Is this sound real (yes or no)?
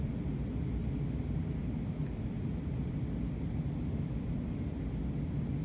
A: yes